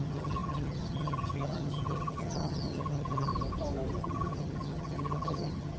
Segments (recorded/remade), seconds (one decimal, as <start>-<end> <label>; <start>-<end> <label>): 0.0-3.3 remade; 3.3-4.0 recorded; 4.0-5.8 remade